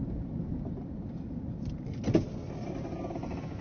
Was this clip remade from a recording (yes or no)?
no